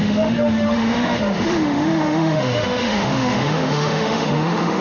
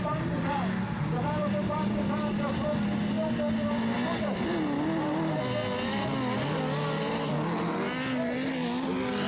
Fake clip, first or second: first